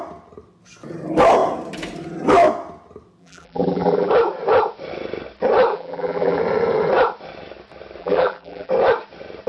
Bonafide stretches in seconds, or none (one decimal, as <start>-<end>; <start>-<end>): 0.0-3.2; 4.1-5.7; 6.4-8.0; 8.7-9.5